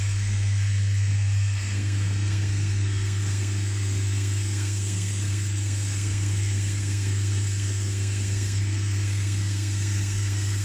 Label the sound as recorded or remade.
remade